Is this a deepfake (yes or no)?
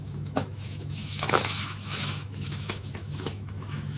yes